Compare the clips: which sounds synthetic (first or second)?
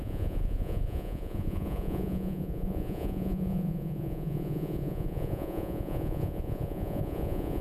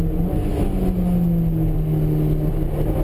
first